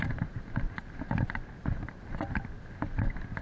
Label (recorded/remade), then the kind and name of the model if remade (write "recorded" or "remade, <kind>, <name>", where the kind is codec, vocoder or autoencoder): recorded